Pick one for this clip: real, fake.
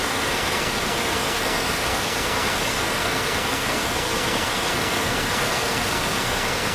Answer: fake